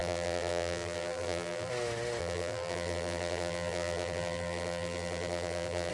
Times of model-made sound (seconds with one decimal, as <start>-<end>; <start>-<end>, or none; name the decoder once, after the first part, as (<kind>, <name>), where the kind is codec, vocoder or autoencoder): 0.0-1.7 (vocoder, BigVGAN v2); 2.2-5.9